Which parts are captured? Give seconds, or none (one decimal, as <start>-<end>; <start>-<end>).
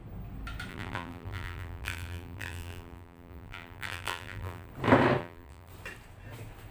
0.0-0.7; 4.7-5.2; 5.7-6.7